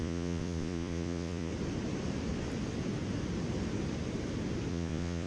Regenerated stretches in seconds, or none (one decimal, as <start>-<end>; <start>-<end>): 0.0-1.5; 4.7-5.3

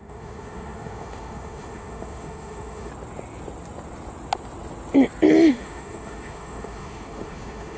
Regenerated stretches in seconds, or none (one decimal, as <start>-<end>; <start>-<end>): 0.0-2.9; 5.5-7.8

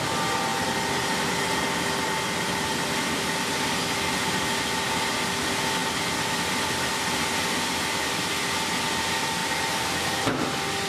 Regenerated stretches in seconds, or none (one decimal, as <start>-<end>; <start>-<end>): 9.4-10.2

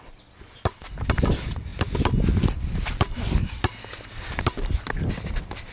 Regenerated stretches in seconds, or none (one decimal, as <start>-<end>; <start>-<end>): none

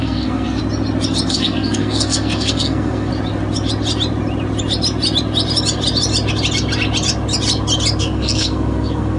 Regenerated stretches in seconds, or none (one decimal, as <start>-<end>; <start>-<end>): 0.0-0.6; 1.3-3.1; 8.0-9.2

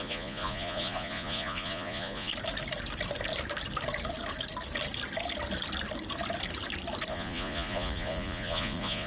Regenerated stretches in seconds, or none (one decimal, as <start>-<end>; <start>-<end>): 0.0-2.3; 7.1-9.1